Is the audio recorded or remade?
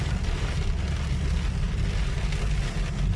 recorded